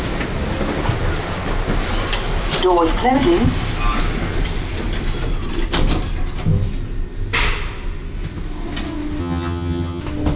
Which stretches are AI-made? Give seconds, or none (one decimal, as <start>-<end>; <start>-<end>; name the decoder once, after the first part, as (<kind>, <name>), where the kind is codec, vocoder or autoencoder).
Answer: 9.2-10.0 (vocoder, HiFi-GAN)